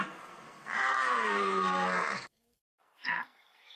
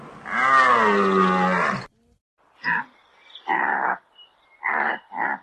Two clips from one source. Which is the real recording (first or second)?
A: second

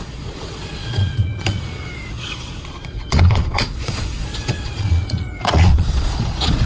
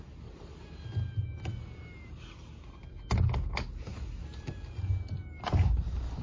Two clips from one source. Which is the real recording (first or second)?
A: second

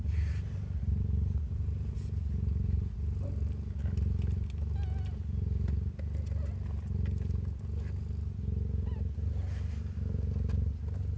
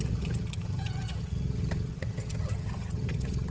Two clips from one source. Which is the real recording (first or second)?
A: first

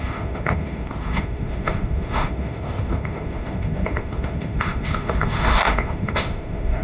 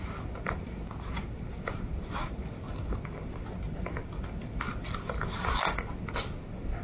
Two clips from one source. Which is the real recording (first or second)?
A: second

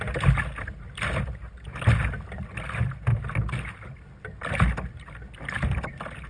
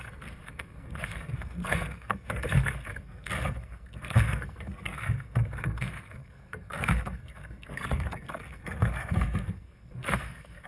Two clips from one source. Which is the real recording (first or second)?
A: first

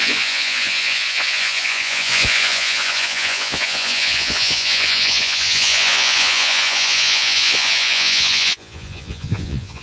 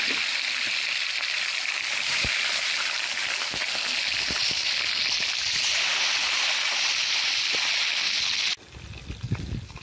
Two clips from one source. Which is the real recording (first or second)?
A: second